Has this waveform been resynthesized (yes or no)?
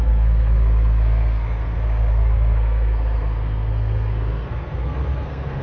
yes